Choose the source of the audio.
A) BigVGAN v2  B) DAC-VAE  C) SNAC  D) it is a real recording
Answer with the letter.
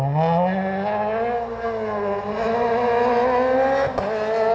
D